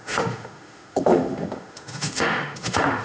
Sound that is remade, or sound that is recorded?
remade